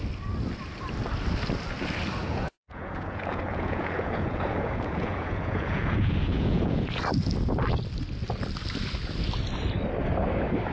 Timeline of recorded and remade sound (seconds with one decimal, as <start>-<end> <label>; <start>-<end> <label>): 0.0-2.2 recorded; 2.2-7.0 remade; 7.0-10.7 recorded